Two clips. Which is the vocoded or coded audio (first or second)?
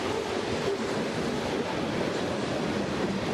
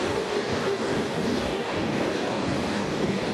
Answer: second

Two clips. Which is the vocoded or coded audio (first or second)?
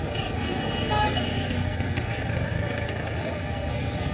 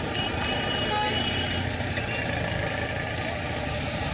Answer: first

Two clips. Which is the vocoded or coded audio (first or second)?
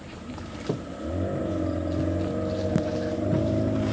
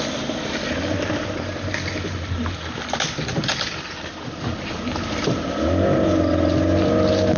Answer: second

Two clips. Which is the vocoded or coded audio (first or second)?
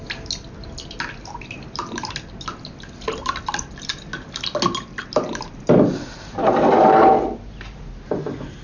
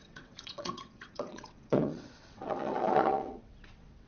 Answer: second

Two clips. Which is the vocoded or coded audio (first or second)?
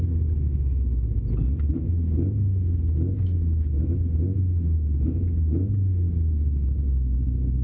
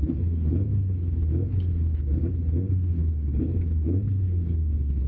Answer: second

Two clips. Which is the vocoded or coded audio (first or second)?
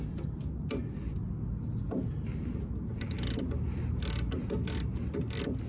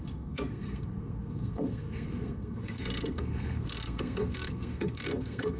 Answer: second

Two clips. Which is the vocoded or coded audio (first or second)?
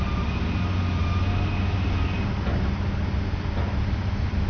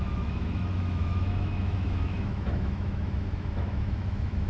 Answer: second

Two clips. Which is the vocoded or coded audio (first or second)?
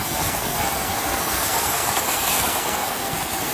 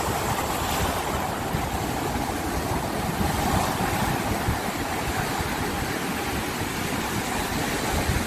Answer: first